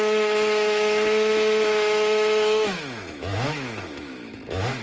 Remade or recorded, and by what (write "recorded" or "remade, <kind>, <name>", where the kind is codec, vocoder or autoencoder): remade, autoencoder, DAC-VAE